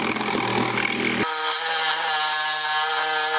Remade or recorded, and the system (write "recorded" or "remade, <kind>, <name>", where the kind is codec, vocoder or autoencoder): recorded